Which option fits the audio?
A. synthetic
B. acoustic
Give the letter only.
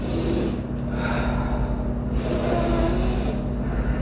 B